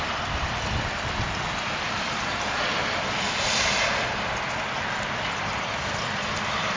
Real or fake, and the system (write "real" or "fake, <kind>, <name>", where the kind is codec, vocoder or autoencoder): fake, vocoder, BigVGAN v2